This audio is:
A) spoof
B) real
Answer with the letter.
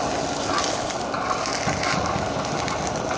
B